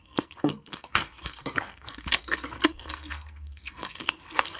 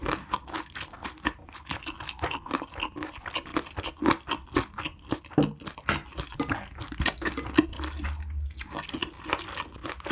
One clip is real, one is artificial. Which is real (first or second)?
second